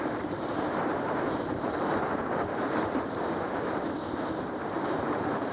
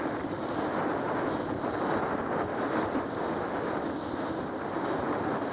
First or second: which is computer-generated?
first